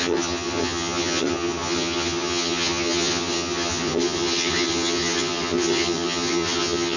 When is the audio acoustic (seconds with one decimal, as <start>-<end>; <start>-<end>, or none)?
none

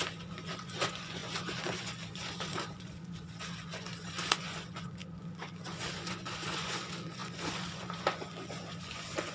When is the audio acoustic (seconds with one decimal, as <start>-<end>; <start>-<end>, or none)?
none

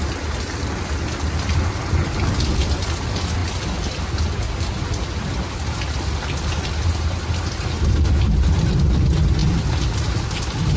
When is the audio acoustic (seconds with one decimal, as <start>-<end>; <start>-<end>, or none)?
0.0-10.8

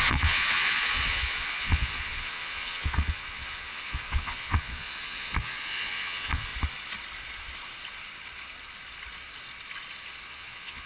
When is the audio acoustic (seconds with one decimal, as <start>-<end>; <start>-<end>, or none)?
6.5-10.3